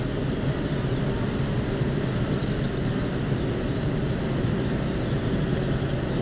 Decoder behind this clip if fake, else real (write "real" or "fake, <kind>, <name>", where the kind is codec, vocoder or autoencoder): real